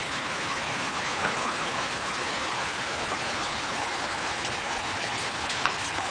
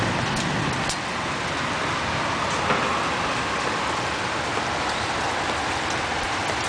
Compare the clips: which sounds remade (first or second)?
first